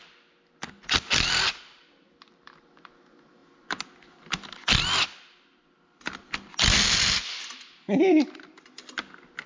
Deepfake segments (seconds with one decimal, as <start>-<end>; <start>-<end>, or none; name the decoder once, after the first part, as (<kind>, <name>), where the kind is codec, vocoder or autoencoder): 7.2-8.9 (vocoder, BigVGAN v2)